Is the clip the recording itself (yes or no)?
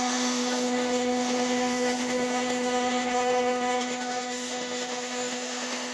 no